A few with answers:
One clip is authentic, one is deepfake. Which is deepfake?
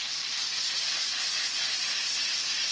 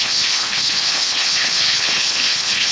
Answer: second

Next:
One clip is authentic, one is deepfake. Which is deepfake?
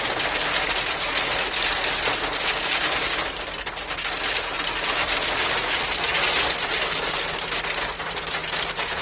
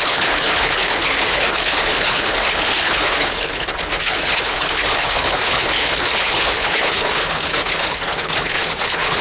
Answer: second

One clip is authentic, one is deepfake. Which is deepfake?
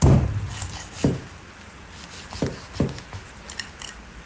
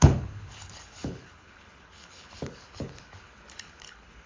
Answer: second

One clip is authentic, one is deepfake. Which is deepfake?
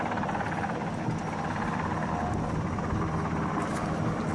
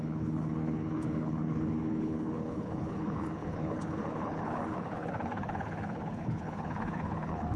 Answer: second